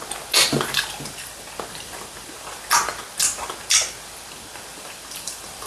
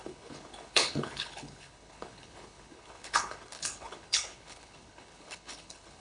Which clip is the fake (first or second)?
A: second